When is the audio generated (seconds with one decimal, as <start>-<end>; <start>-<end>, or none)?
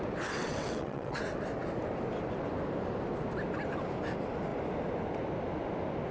0.4-1.2